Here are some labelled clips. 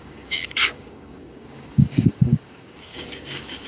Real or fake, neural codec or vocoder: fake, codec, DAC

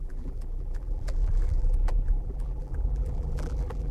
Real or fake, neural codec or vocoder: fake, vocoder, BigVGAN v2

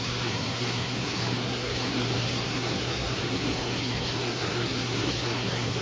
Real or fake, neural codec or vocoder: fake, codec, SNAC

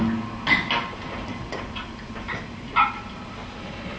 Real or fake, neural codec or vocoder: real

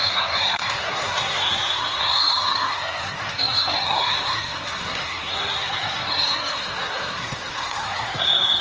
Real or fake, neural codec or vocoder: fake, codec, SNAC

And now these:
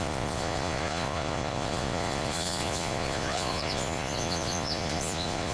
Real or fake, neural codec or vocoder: fake, vocoder, Vocos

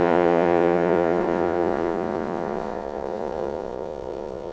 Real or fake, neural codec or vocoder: fake, vocoder, Vocos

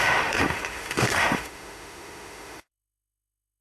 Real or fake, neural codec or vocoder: fake, autoencoder, DAC-VAE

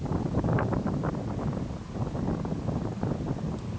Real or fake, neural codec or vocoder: real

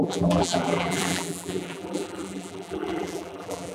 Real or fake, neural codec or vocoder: fake, vocoder, BigVGAN v2